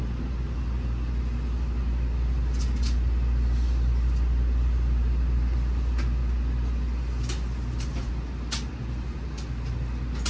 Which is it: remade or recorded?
recorded